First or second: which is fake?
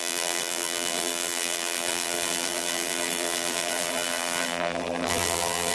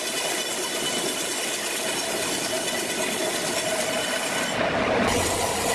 first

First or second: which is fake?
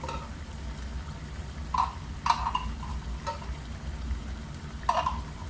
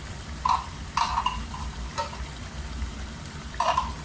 second